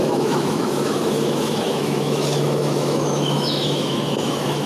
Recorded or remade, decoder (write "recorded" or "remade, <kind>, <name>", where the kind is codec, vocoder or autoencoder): remade, autoencoder, DAC-VAE